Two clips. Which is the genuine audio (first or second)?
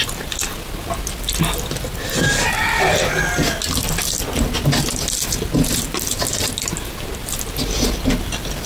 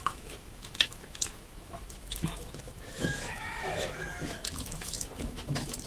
first